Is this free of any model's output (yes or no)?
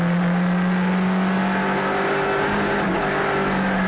yes